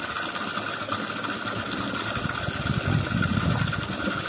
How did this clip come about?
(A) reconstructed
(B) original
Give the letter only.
B